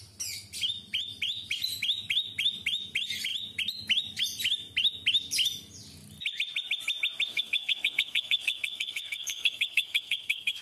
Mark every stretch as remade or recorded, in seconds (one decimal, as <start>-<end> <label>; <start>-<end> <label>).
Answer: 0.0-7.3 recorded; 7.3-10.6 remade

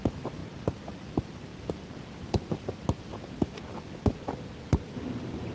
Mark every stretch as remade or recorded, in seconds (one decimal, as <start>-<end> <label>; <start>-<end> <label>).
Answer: 0.0-5.5 recorded

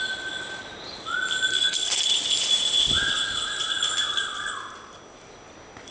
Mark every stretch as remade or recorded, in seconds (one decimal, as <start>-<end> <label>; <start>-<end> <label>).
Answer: 0.0-1.5 recorded; 1.5-2.0 remade; 2.0-5.9 recorded

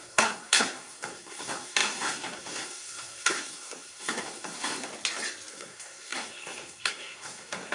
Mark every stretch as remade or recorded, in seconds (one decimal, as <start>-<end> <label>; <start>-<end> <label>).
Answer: 0.0-4.9 remade; 4.9-5.5 recorded; 5.5-7.7 remade

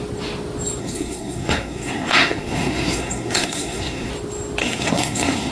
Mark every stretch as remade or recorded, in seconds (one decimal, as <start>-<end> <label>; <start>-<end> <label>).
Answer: 0.0-0.8 recorded; 0.8-4.1 remade; 4.1-4.6 recorded; 4.6-5.5 remade

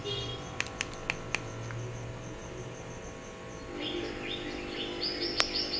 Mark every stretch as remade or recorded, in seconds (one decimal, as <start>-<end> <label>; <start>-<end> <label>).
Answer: 0.0-5.8 recorded

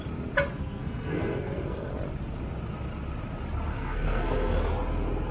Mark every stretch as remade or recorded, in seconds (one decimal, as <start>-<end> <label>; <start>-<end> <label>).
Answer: 0.0-0.5 recorded; 0.5-1.9 remade; 1.9-3.7 recorded; 3.7-4.6 remade; 4.6-5.3 recorded

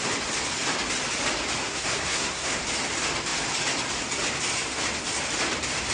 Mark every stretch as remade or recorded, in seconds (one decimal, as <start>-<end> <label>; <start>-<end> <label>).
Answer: 0.0-1.6 recorded; 1.6-2.6 remade; 2.6-5.9 recorded